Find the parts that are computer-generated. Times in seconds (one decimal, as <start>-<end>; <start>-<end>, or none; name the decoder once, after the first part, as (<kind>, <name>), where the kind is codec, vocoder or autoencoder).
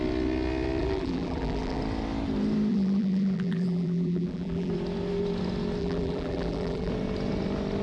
0.8-1.8 (vocoder, BigVGAN v2); 2.7-4.7; 5.8-6.9